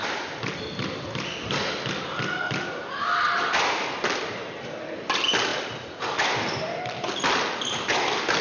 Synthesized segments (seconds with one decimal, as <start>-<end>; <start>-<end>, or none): none